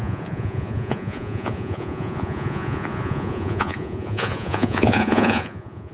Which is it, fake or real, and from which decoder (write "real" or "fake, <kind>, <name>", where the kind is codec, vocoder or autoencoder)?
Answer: fake, vocoder, Vocos